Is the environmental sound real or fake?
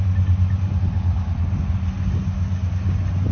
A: real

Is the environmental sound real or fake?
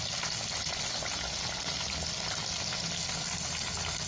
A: real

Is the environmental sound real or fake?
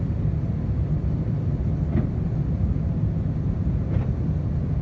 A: real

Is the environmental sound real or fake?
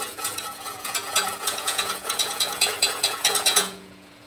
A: fake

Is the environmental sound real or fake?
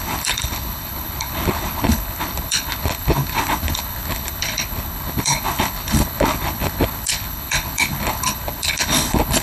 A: fake